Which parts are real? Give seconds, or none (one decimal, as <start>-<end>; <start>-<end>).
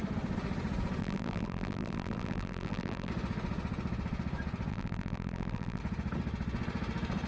0.0-1.0; 3.1-4.7; 5.8-7.3